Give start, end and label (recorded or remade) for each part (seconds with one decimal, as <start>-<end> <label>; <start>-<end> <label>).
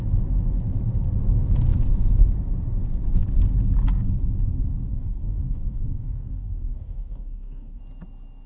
0.0-4.9 recorded; 4.9-7.8 remade; 7.8-8.5 recorded